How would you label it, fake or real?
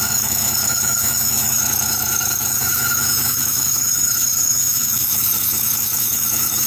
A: fake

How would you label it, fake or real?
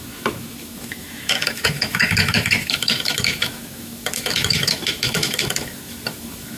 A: fake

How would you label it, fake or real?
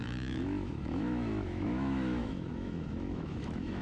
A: fake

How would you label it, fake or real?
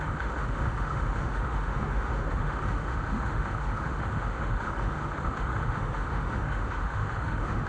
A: fake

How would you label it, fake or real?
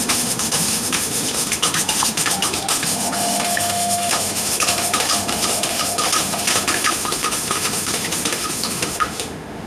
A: fake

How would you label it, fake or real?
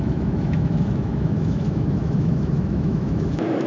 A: fake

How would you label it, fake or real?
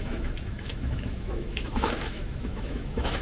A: fake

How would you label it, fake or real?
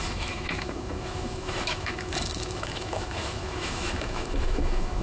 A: fake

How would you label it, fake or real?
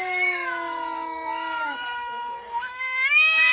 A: fake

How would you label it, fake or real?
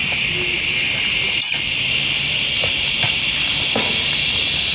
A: real